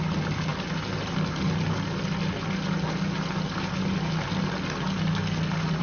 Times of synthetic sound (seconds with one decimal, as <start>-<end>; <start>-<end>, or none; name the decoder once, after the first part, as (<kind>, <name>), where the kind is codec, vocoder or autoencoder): none